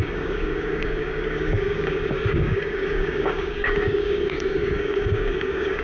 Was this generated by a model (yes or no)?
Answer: yes